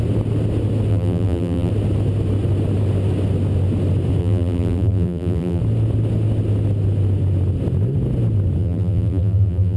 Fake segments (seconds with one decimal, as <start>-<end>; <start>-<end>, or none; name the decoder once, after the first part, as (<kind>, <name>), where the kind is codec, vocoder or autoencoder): 0.9-1.7 (vocoder, BigVGAN v2); 4.2-5.6; 8.6-9.8